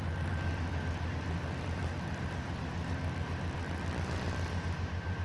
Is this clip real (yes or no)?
yes